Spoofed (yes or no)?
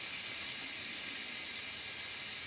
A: no